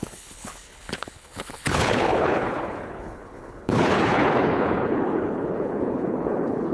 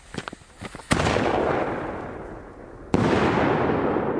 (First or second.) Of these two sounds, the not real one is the first